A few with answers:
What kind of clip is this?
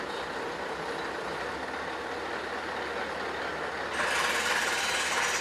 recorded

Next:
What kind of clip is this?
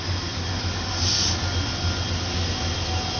recorded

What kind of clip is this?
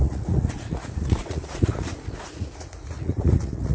remade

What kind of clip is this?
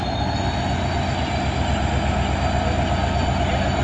recorded